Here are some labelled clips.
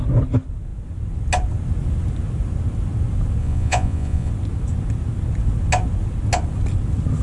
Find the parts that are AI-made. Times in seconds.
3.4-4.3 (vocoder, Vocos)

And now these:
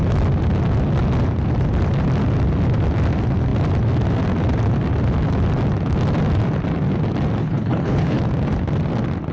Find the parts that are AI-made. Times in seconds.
7.4-8.2 (codec, HILCodec)

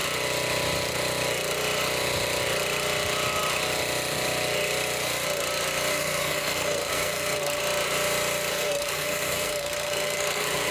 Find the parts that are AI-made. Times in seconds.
5.9-7.6 (codec, SNAC); 8.5-10.7

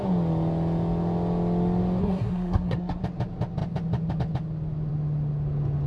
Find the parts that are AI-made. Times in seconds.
2.0-3.0 (codec, SNAC)

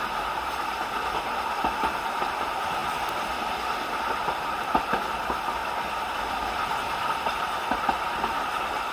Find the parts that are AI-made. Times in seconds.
none